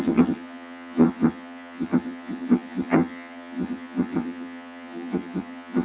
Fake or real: fake